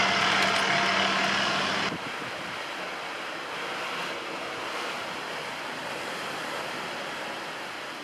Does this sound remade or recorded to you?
recorded